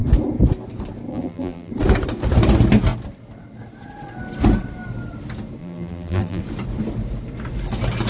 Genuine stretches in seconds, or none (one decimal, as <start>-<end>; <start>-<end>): 0.0-1.1; 1.7-5.6; 6.4-8.1